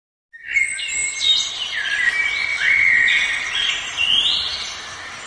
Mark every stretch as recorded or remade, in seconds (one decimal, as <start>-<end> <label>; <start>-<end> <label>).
0.0-2.5 recorded; 2.5-3.7 remade; 3.7-5.3 recorded